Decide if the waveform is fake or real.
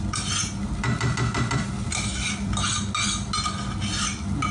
real